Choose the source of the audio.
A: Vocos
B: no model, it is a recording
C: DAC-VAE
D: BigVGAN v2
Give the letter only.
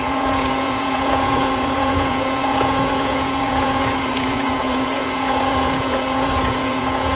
A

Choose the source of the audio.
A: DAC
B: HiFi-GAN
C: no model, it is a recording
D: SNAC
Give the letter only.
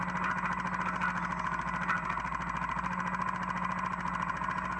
C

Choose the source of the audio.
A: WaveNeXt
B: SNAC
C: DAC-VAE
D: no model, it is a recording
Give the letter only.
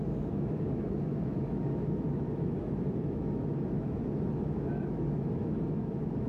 C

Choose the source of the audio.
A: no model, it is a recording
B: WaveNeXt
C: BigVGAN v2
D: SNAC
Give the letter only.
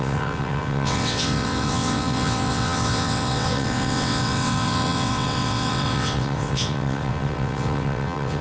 B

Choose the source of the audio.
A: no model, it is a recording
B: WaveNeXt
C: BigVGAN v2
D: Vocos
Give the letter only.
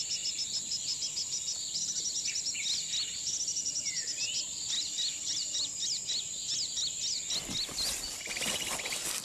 A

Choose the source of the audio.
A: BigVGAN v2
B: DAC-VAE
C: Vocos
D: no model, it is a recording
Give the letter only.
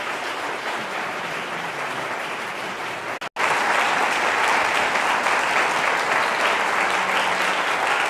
D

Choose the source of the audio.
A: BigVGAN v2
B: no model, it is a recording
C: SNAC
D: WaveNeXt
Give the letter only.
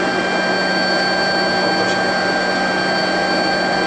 B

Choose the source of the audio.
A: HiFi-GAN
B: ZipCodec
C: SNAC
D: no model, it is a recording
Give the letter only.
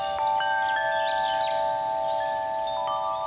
D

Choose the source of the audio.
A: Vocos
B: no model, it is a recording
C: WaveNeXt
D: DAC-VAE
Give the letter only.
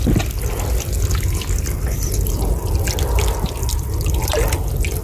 B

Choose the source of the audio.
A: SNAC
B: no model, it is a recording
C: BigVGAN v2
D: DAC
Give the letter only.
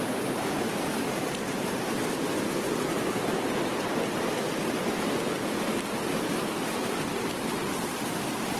B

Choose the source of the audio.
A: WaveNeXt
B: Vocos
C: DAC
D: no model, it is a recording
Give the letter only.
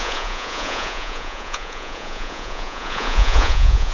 B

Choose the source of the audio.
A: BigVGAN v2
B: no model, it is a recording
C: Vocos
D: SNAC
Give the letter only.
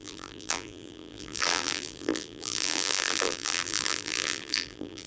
A